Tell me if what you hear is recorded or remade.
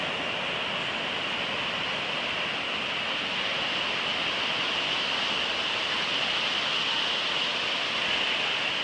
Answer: recorded